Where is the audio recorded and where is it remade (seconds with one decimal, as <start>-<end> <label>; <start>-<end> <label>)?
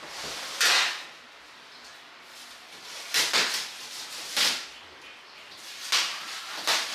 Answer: 0.0-6.9 recorded